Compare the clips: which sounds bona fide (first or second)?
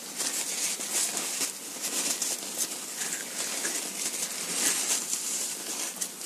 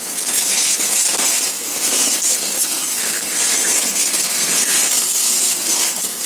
first